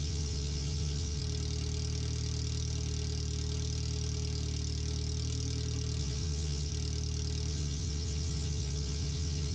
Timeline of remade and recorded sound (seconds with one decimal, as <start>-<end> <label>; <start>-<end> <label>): 0.0-1.2 remade; 1.2-6.0 recorded; 6.0-6.7 remade; 6.7-7.5 recorded; 7.5-9.5 remade